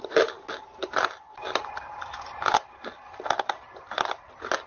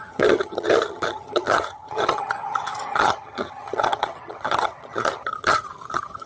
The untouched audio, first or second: first